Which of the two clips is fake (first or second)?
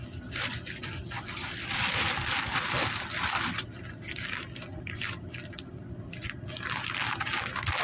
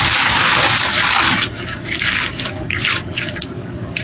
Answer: second